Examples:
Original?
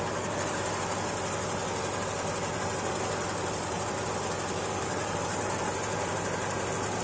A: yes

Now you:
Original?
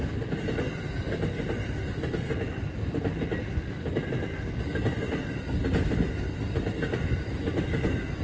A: yes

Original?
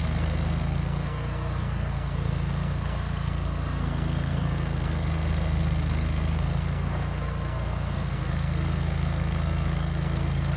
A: no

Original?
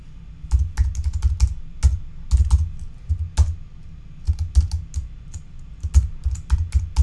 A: yes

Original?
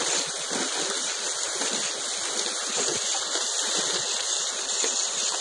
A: yes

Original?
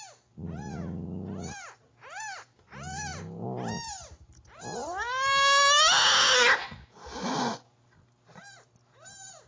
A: yes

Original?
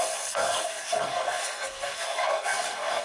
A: no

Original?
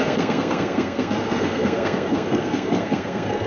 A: no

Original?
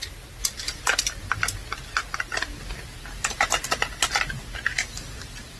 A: yes